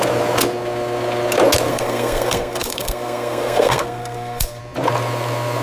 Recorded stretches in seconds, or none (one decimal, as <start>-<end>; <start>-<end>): 0.0-1.7; 4.6-5.6